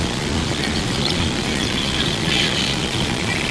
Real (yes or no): no